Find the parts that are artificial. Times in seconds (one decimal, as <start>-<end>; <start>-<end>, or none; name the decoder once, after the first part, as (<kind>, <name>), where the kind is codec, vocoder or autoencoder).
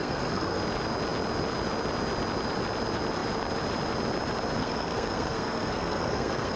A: 0.0-0.6 (codec, SNAC); 4.6-6.6